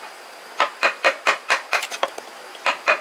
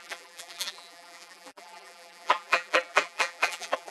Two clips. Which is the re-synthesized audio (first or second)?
second